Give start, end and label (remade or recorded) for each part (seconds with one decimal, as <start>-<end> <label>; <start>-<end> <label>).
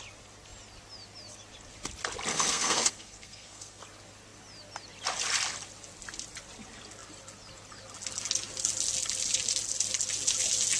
0.0-2.3 recorded; 2.3-3.8 remade; 3.8-10.8 recorded